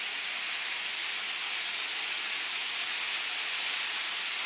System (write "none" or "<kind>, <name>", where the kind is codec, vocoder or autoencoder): none